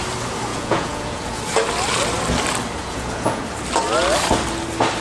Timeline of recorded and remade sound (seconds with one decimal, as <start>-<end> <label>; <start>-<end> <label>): 0.0-0.5 recorded; 0.5-1.4 remade; 1.4-2.8 recorded; 2.8-3.4 remade; 3.4-5.0 recorded

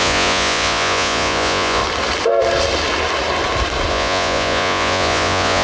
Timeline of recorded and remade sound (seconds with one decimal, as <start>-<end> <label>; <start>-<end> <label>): 0.0-1.8 remade; 1.8-3.9 recorded; 3.9-5.6 remade

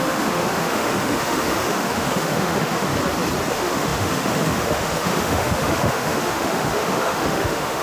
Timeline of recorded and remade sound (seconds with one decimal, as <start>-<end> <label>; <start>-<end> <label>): 0.0-2.9 remade; 2.9-3.5 recorded; 3.5-7.8 remade

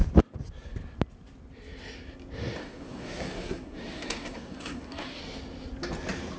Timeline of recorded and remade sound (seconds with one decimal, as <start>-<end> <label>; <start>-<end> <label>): 0.0-2.6 recorded; 2.6-5.2 remade; 5.2-6.4 recorded